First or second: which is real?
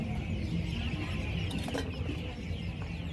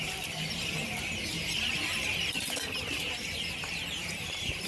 first